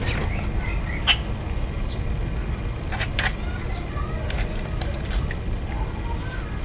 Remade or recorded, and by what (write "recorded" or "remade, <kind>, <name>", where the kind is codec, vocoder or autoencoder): recorded